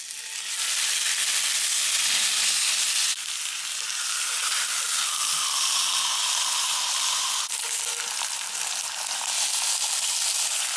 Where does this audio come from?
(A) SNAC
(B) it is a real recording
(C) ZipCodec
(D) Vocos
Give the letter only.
B